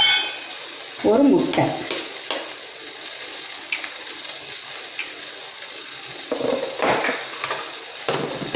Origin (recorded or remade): recorded